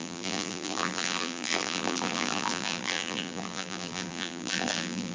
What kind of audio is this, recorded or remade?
remade